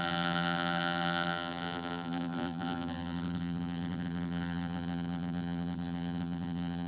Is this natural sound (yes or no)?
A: no